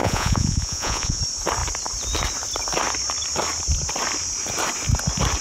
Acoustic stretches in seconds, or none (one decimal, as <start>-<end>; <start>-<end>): 1.2-5.4

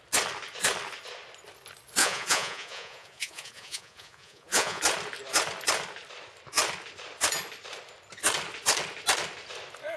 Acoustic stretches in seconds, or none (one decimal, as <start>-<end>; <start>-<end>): 0.0-2.0; 4.8-10.0

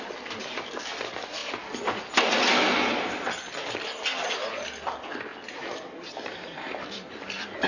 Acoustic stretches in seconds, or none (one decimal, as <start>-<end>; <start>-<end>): 0.0-7.7

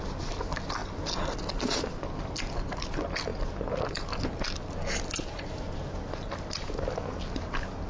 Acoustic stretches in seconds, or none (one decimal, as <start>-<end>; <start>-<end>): 0.0-7.9